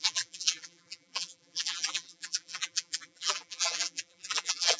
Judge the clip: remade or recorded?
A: remade